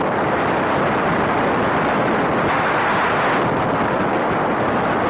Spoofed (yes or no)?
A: no